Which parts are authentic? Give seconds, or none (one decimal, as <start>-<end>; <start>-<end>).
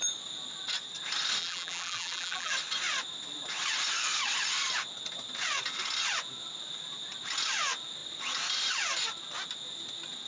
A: 0.0-1.4; 2.5-10.3